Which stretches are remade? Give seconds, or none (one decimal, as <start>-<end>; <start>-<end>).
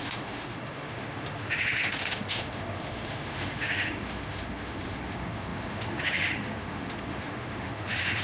0.0-8.2